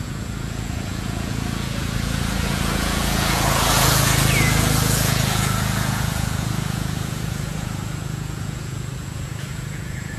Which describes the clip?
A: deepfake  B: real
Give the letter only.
A